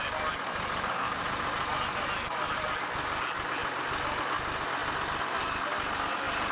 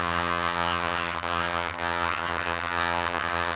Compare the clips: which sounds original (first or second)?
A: first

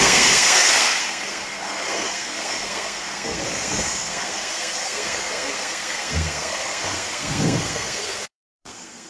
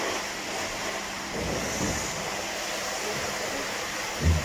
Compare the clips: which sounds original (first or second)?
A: second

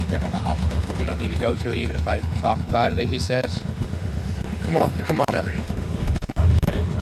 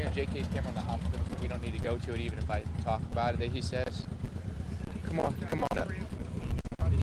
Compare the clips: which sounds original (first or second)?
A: second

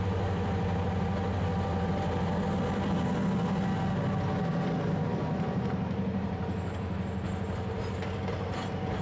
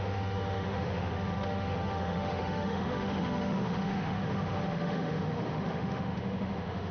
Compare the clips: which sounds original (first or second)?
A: first